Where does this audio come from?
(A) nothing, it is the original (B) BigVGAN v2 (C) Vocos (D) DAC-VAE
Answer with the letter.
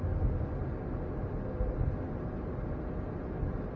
A